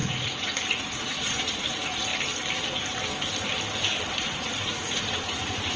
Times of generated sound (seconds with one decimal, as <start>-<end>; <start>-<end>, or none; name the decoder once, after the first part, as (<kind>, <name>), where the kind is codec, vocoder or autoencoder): 0.0-2.1 (vocoder, Vocos); 4.1-5.8